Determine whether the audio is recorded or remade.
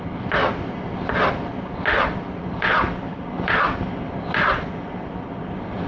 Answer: recorded